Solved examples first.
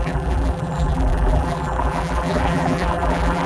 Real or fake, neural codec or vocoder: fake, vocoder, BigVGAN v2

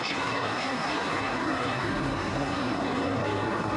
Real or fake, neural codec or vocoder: fake, codec, SNAC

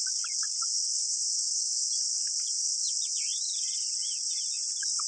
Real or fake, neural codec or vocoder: real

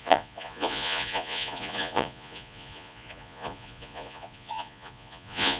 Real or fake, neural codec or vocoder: fake, vocoder, Vocos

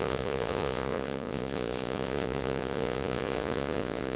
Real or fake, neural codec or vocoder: fake, vocoder, Vocos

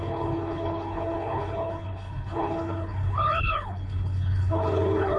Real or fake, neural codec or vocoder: fake, codec, HILCodec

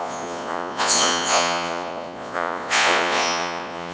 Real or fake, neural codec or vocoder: fake, vocoder, Vocos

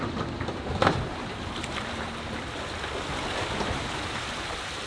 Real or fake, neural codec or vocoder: fake, vocoder, BigVGAN v2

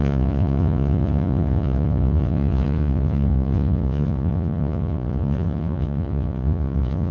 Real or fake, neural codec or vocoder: fake, vocoder, Vocos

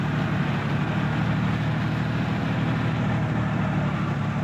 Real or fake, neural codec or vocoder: real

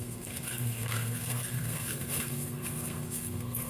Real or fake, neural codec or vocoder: fake, codec, SNAC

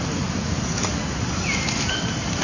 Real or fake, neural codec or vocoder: real